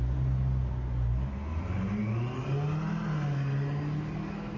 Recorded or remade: recorded